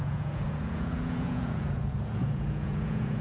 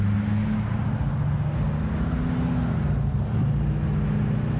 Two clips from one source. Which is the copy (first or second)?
first